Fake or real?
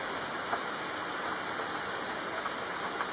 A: real